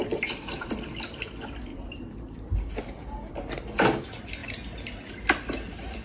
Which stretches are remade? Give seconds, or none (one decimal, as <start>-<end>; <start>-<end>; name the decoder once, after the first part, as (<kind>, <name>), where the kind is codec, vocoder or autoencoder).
0.0-0.7 (vocoder, BigVGAN v2); 1.7-3.3